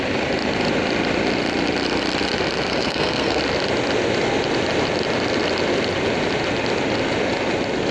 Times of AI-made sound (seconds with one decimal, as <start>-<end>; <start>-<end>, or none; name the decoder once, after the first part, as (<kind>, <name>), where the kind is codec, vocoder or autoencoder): 2.7-3.4 (codec, SNAC)